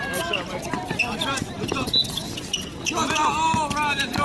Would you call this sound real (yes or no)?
yes